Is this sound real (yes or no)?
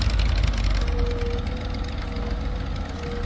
yes